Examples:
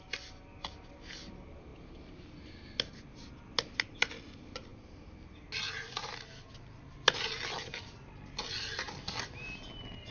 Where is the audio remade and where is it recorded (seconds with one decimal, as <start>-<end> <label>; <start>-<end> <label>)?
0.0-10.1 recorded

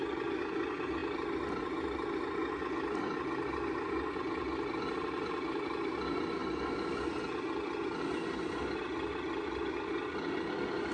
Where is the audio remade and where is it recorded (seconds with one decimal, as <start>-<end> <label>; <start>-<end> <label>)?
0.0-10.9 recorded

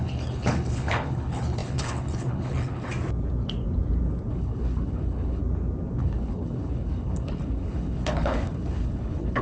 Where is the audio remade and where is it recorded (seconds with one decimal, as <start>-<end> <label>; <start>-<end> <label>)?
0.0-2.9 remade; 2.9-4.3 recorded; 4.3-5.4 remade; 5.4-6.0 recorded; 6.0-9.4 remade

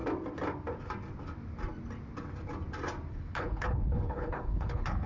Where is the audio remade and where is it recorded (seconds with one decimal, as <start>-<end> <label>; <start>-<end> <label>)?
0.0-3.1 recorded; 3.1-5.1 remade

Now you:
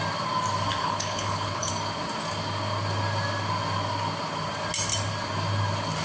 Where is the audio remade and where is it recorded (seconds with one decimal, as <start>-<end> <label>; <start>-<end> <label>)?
0.0-0.8 recorded; 0.8-1.7 remade; 1.7-6.0 recorded